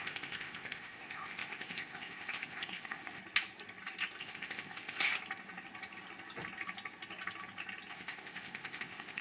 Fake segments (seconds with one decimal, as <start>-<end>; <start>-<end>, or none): 0.0-3.2; 4.2-5.1; 7.9-9.2